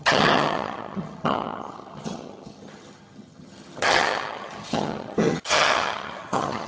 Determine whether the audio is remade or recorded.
remade